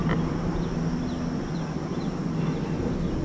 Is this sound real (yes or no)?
yes